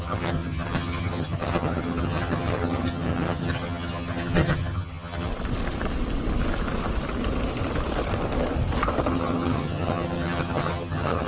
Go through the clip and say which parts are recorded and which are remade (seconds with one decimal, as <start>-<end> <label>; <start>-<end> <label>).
0.0-5.3 remade; 5.3-9.1 recorded; 9.1-11.3 remade